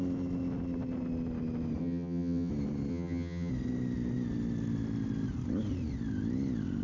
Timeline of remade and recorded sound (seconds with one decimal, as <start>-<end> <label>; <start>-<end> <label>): 0.0-1.8 recorded; 1.8-2.5 remade; 2.5-2.9 recorded; 2.9-3.5 remade; 3.5-6.8 recorded

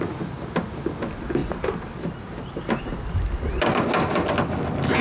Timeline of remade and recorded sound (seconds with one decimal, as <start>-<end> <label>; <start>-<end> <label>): 0.0-5.0 recorded

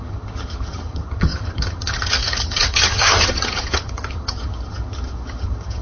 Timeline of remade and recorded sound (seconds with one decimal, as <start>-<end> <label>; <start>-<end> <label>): 0.0-5.8 remade

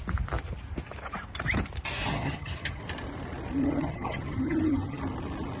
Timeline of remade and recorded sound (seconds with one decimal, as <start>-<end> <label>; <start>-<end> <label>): 0.0-2.1 recorded; 2.1-2.8 remade; 2.8-3.6 recorded; 3.6-5.0 remade; 5.0-5.6 recorded